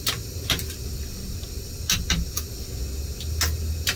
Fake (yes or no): no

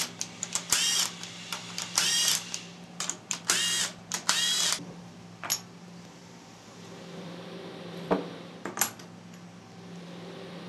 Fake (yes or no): yes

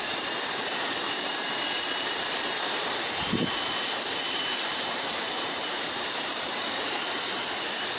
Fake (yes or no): yes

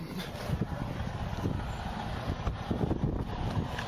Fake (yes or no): no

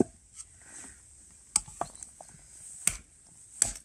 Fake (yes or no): no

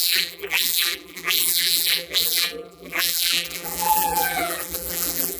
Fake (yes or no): yes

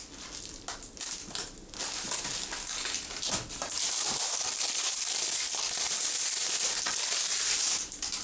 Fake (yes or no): no